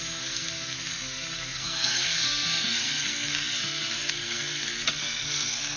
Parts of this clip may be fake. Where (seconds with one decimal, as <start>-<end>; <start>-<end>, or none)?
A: 0.0-5.8